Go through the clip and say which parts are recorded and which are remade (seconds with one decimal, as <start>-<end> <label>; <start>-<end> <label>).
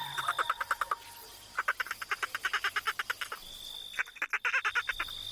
0.0-5.3 recorded